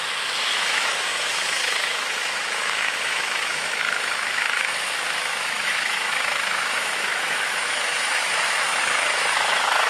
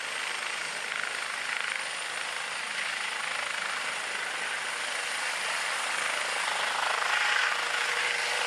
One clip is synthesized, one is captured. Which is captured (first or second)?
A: second